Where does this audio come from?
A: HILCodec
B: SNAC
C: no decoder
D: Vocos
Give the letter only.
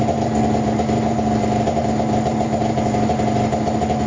C